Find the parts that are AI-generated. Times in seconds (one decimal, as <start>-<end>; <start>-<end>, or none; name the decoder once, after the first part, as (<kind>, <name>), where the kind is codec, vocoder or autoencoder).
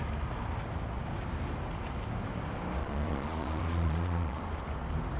2.8-4.4 (vocoder, Vocos)